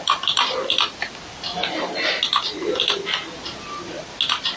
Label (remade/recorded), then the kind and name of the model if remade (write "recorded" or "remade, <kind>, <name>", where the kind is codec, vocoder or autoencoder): recorded